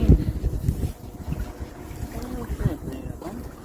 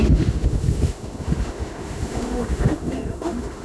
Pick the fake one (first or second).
second